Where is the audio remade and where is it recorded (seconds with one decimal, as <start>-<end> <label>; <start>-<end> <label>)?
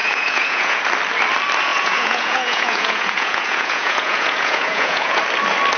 0.0-0.8 remade; 0.8-1.7 recorded; 1.7-5.2 remade; 5.2-5.8 recorded